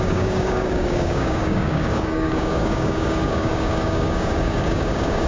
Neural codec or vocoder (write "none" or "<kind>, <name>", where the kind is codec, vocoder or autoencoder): codec, DAC